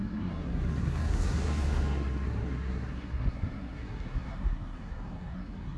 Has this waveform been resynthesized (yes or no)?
yes